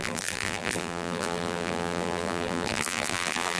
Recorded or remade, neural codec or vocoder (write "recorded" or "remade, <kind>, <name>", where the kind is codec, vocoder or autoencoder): remade, vocoder, BigVGAN v2